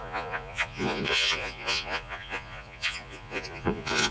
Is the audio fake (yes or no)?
yes